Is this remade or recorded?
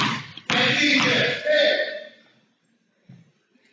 recorded